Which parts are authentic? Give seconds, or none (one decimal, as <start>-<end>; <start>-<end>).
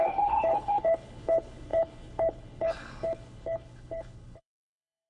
none